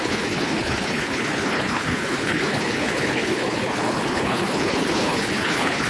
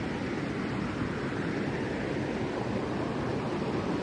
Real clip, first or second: second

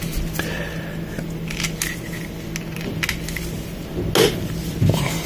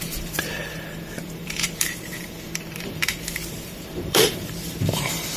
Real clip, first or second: first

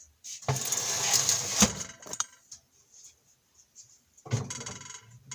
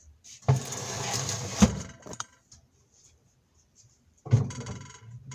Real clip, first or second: first